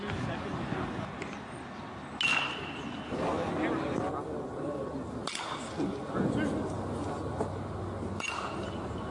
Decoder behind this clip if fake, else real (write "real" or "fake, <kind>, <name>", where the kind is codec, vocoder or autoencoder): real